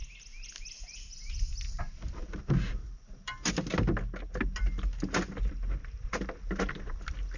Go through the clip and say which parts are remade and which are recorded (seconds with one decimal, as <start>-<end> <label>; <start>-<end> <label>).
0.0-7.4 recorded